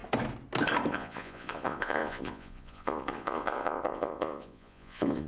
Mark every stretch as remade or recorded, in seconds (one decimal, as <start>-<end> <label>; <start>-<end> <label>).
0.0-0.9 recorded; 0.9-5.3 remade